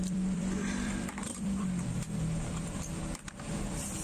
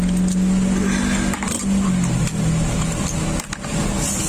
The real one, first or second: second